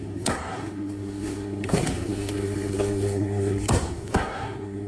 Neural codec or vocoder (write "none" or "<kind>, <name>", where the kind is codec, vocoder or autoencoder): codec, SNAC